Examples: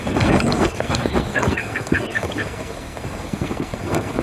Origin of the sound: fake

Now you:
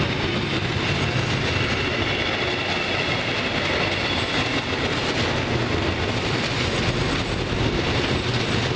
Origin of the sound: real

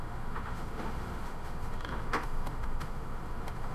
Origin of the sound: fake